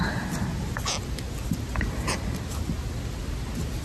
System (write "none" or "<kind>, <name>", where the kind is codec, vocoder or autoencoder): none